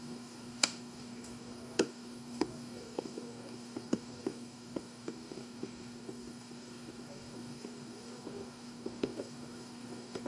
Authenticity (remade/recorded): remade